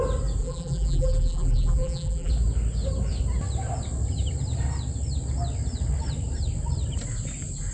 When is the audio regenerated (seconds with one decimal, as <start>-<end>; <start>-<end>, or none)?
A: 0.4-2.3